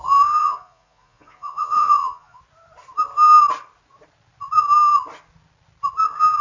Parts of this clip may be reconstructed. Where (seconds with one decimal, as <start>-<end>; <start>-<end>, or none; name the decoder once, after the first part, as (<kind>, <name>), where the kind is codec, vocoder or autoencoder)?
0.4-2.4 (vocoder, Vocos)